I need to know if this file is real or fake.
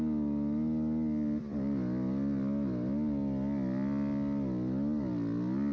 real